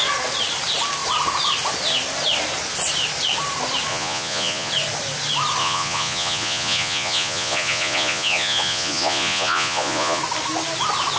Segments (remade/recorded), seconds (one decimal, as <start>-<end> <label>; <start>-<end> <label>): 0.0-3.9 recorded; 3.9-4.7 remade; 4.7-5.6 recorded; 5.6-10.2 remade; 10.2-11.2 recorded